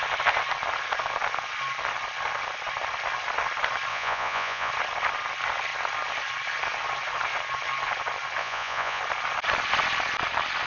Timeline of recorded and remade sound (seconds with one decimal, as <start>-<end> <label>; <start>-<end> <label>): 0.0-3.9 recorded; 3.9-4.7 remade; 4.7-8.4 recorded; 8.4-9.0 remade; 9.0-10.7 recorded

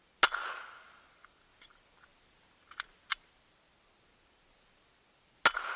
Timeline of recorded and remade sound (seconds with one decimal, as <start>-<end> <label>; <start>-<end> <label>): 0.0-5.8 recorded

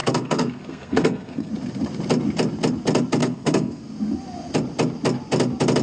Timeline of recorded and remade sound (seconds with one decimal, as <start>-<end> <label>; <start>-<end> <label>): 0.0-1.5 remade; 1.5-3.2 recorded; 3.2-3.8 remade; 3.8-5.8 recorded